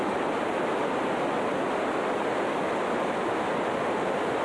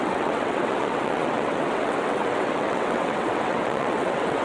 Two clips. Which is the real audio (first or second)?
first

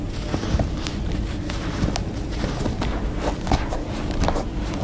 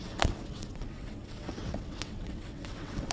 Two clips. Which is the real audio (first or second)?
first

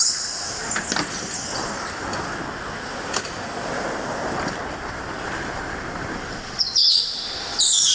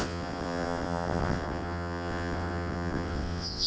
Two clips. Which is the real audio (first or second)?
first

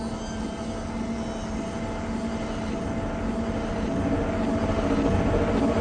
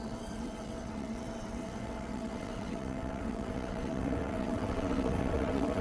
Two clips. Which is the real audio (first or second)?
first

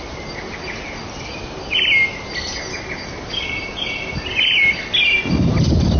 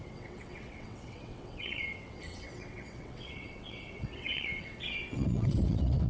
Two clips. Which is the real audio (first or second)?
first